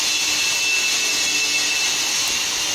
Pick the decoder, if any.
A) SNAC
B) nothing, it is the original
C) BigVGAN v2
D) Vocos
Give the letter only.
B